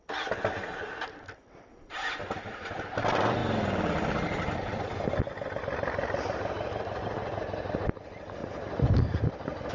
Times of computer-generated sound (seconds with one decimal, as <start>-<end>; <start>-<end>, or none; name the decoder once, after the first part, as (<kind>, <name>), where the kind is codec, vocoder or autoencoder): 1.7-2.2 (vocoder, BigVGAN v2); 3.4-5.6